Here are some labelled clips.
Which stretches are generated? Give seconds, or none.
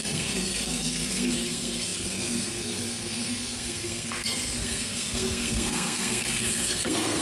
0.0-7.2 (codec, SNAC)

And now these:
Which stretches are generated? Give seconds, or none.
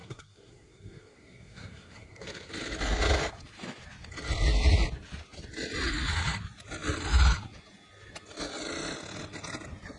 0.0-2.5 (codec, SNAC)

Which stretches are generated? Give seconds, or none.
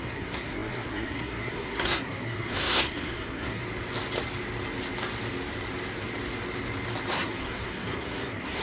0.0-3.6 (codec, SNAC); 7.1-8.6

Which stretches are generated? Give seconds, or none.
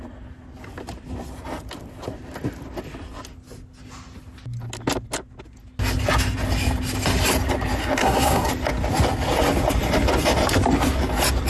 7.8-8.5 (codec, SNAC)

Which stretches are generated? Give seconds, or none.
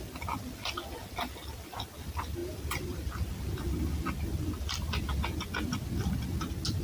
none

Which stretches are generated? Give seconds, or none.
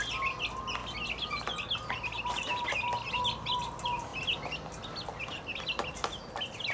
none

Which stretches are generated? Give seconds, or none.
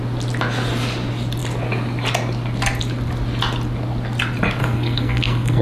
4.6-5.6 (codec, SNAC)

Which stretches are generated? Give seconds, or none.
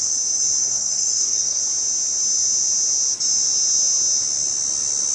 0.6-1.6 (codec, SNAC)